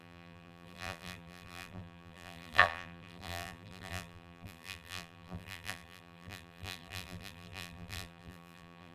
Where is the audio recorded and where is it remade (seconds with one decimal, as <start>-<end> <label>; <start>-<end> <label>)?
0.0-8.9 remade